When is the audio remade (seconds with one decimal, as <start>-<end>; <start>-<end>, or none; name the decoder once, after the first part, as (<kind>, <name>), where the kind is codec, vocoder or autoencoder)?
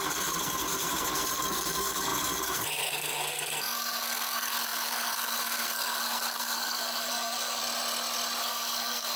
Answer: 0.0-7.6 (codec, SNAC); 8.4-9.2